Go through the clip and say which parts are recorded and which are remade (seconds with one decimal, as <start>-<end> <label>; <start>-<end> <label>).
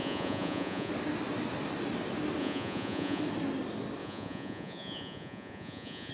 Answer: 0.0-0.9 remade; 0.9-2.4 recorded; 2.4-3.2 remade; 3.2-4.0 recorded; 4.0-6.1 remade